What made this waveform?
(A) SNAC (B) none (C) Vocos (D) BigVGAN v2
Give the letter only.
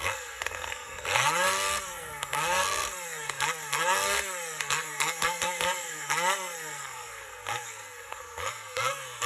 A